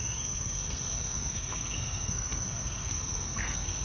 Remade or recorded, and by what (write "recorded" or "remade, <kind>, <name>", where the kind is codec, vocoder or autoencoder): remade, codec, SNAC